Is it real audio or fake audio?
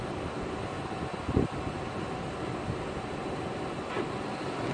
real